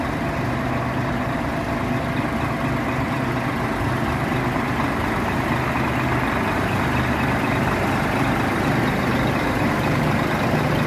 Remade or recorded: recorded